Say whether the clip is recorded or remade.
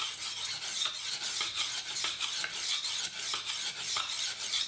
recorded